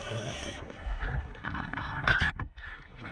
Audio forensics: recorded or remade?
remade